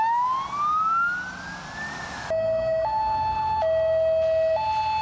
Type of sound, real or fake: real